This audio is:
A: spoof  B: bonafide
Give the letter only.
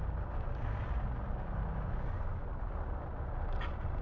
B